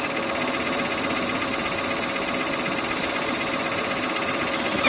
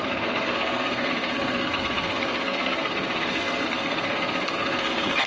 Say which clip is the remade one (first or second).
second